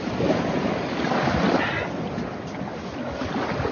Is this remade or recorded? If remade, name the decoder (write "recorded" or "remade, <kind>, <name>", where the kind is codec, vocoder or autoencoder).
recorded